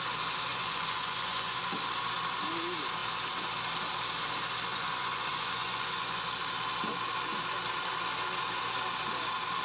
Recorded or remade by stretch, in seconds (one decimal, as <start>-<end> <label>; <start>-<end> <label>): 0.0-0.5 recorded; 0.5-1.6 remade; 1.6-4.7 recorded; 4.7-6.2 remade; 6.2-9.6 recorded